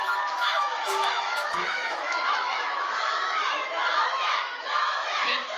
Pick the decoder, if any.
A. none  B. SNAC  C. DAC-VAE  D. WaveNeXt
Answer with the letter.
C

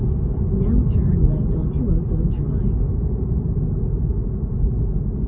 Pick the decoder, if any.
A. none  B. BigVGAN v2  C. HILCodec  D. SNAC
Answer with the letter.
A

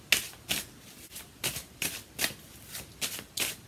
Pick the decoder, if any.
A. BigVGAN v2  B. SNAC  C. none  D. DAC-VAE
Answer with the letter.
C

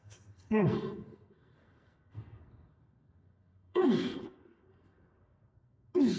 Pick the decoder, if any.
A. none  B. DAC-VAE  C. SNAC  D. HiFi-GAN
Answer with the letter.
C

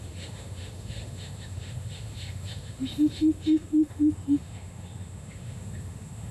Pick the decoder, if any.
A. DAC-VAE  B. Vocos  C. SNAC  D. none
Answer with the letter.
A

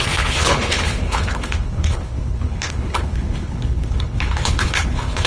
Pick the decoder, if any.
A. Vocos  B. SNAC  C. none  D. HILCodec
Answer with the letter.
D